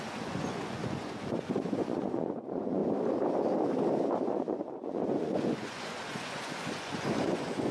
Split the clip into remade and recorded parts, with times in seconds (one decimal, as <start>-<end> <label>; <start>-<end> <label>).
0.0-2.8 remade; 2.8-4.2 recorded; 4.2-7.7 remade